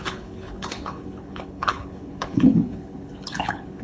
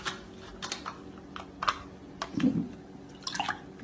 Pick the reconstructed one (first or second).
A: first